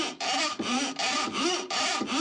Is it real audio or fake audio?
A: fake